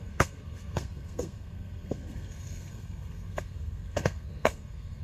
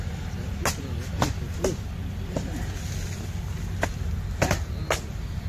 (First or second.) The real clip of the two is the second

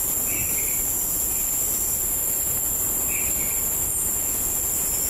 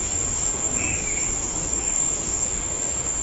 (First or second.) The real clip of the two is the first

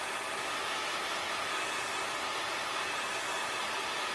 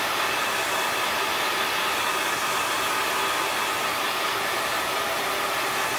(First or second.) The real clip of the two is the first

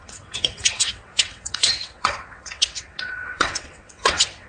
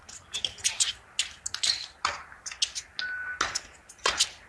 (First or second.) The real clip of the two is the second